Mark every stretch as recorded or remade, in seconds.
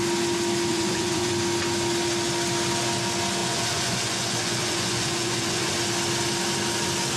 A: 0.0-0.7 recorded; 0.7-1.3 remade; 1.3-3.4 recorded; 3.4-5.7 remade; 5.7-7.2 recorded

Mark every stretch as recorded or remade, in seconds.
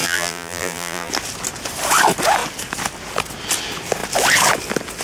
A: 0.0-1.1 remade; 1.1-5.0 recorded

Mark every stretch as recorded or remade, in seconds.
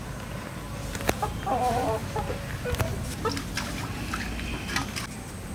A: 0.0-5.5 recorded